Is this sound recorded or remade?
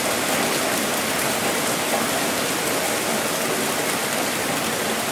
remade